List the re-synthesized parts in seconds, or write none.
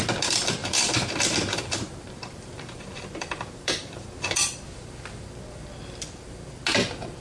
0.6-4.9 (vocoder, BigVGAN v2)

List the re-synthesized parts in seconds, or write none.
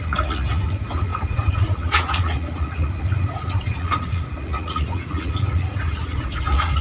0.0-6.8 (vocoder, Vocos)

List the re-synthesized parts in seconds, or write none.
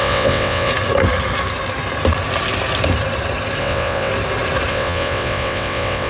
0.0-0.7 (vocoder, WaveNeXt); 3.6-4.1; 4.7-6.1